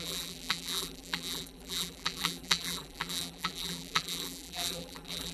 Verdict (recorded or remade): remade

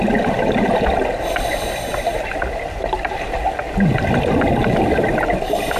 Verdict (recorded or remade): recorded